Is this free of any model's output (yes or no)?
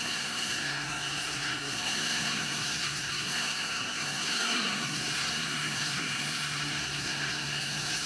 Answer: no